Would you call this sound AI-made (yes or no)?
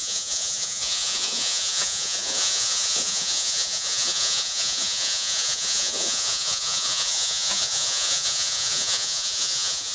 yes